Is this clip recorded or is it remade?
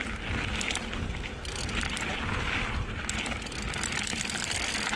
recorded